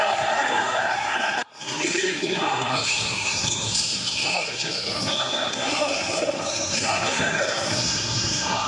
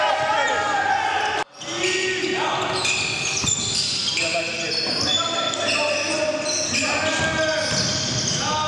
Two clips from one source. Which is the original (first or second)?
second